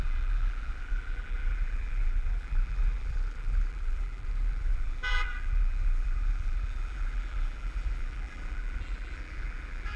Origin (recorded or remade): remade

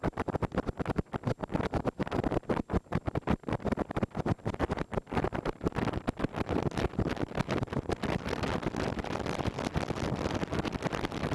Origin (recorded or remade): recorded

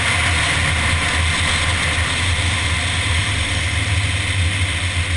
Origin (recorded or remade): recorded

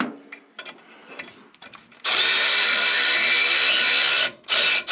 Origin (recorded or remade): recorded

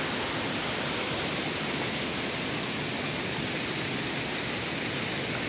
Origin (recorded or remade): recorded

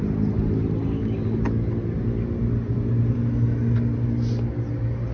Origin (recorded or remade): recorded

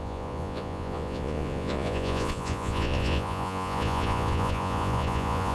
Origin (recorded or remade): remade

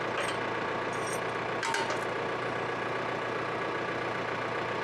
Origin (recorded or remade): recorded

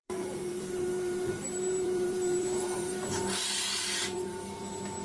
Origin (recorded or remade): remade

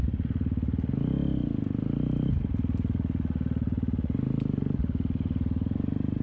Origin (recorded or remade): recorded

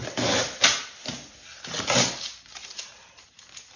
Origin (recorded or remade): recorded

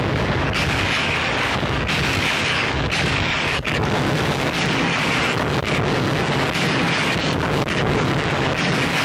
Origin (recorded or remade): remade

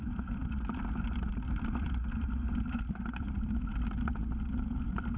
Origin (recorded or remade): recorded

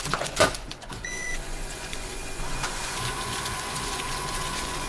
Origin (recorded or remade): remade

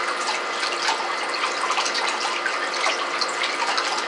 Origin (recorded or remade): recorded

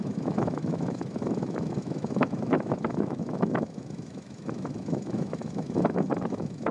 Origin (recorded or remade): remade